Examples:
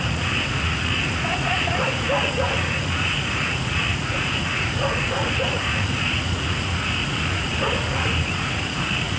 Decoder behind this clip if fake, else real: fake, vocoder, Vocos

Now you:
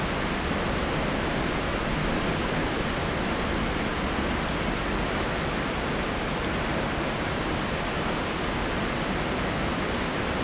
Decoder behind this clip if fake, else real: real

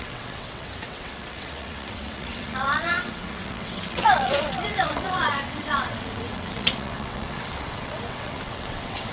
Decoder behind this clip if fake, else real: fake, vocoder, WaveNeXt